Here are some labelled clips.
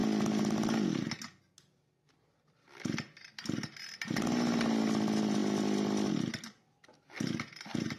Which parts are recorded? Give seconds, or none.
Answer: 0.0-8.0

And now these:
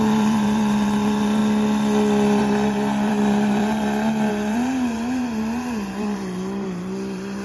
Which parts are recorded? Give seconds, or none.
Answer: 1.4-2.4; 3.6-4.3

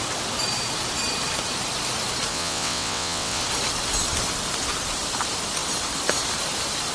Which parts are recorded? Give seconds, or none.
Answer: 0.0-2.3; 3.4-6.9

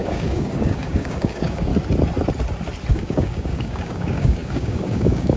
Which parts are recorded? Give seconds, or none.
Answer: 1.7-2.9

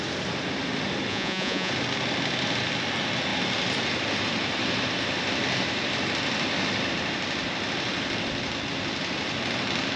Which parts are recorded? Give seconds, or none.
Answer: 0.0-1.1; 1.7-10.0

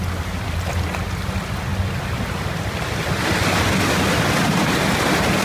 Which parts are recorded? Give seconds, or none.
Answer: 0.0-5.4

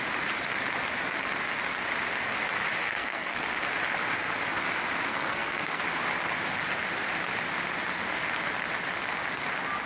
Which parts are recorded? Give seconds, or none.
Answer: 0.0-2.8; 3.4-5.1; 5.8-9.9

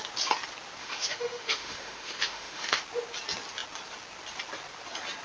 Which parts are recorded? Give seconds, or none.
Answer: 0.0-0.8; 2.8-5.2